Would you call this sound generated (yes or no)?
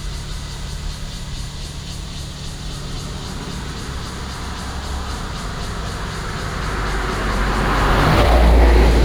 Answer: no